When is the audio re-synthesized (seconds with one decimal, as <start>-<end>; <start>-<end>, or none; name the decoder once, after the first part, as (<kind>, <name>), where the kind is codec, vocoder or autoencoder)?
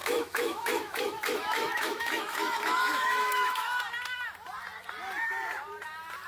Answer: 0.0-3.8 (autoencoder, DAC-VAE)